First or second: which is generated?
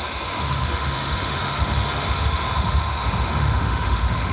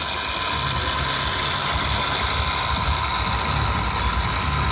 first